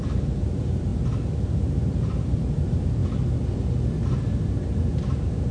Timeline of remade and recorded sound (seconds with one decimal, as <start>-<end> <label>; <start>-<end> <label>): 0.0-0.9 remade; 0.9-1.4 recorded; 1.4-3.0 remade; 3.0-4.4 recorded; 4.4-5.5 remade